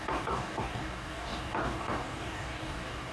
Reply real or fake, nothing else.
fake